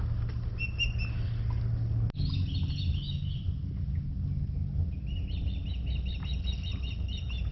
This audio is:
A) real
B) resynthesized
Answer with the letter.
A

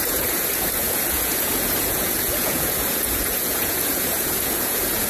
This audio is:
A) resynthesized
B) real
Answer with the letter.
A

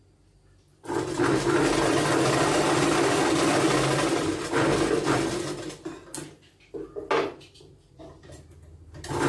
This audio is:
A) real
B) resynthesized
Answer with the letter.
A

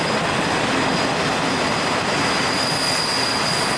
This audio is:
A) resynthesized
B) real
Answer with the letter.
B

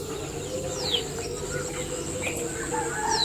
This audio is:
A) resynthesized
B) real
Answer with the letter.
B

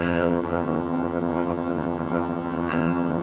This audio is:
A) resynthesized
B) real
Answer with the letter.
A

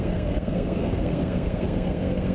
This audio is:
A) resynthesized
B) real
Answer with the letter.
A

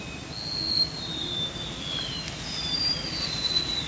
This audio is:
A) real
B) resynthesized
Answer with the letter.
A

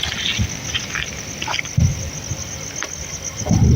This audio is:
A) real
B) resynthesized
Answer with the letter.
A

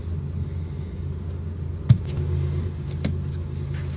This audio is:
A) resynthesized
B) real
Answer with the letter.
B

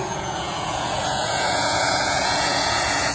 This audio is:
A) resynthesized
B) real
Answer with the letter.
A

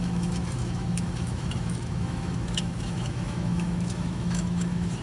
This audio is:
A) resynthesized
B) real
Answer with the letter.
A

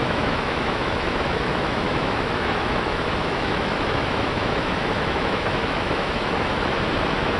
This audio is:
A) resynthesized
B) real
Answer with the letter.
A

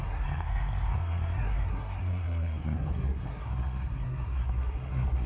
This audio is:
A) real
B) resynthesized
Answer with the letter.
B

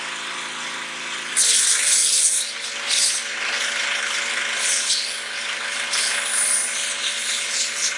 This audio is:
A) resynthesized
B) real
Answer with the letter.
B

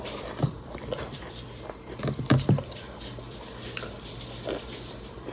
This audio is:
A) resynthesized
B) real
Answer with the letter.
A